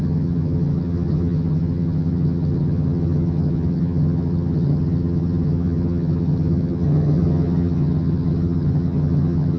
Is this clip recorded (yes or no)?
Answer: no